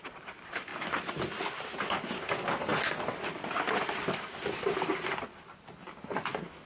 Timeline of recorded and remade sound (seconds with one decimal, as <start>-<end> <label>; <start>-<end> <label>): 0.0-6.7 recorded